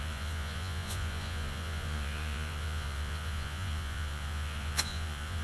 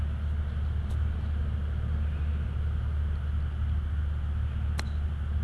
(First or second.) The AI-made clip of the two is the first